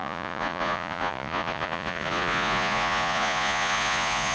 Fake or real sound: fake